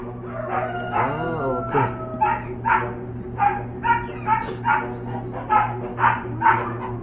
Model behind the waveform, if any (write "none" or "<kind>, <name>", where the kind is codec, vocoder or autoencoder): none